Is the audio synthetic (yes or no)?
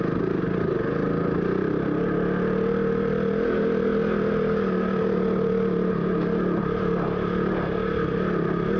no